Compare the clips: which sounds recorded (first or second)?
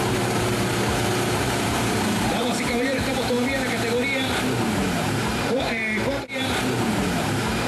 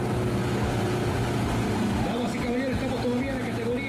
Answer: second